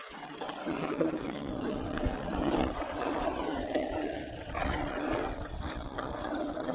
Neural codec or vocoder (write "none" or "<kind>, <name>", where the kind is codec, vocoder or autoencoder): vocoder, WaveNeXt